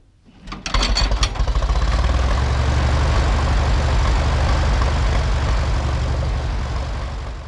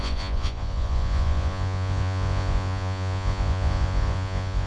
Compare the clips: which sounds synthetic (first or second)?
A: second